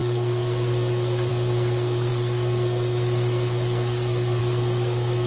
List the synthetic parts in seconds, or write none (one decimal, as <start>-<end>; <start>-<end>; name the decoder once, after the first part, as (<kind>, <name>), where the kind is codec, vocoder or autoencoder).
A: 0.0-5.3 (codec, SNAC)